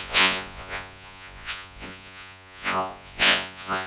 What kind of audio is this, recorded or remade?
remade